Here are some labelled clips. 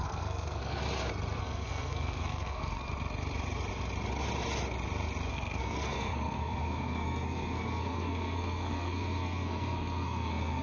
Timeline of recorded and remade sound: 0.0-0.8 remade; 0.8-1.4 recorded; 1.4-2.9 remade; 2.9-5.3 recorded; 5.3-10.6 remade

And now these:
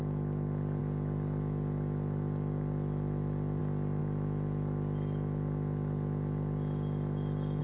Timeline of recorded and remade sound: 0.0-7.6 recorded

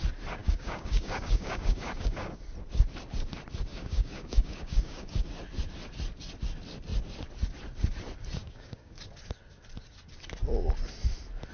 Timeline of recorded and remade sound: 0.0-0.4 recorded; 0.4-2.4 remade; 2.4-3.7 recorded; 3.7-5.2 remade; 5.2-8.4 recorded; 8.4-9.0 remade; 9.0-11.5 recorded

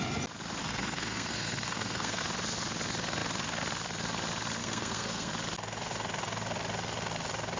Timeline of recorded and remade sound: 0.0-0.6 recorded; 0.6-2.2 remade; 2.2-4.6 recorded; 4.6-5.3 remade; 5.3-7.6 recorded

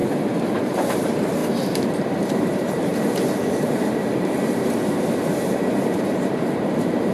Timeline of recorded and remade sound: 0.0-0.6 recorded; 0.6-2.9 remade; 2.9-3.7 recorded; 3.7-7.1 remade

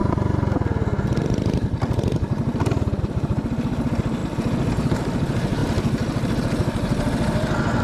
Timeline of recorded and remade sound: 0.0-3.0 recorded; 3.0-4.2 remade; 4.2-4.7 recorded; 4.7-5.6 remade; 5.6-7.8 recorded

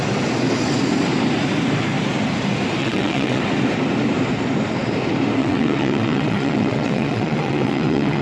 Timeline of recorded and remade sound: 0.0-2.8 recorded; 2.8-3.4 remade; 3.4-5.4 recorded; 5.4-8.2 remade

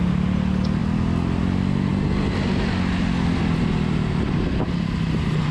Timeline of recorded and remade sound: 0.0-5.5 recorded